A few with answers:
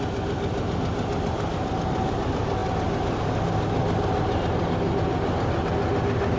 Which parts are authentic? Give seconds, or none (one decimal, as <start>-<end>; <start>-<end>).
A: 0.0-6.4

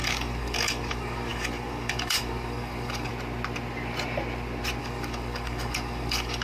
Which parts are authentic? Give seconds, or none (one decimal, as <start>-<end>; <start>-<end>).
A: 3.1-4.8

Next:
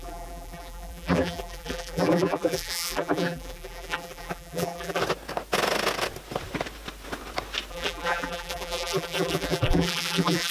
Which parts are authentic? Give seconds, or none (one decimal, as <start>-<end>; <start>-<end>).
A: 5.0-7.7

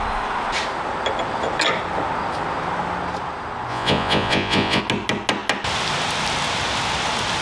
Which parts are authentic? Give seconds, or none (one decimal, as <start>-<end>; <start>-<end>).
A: 0.0-3.7; 4.8-7.4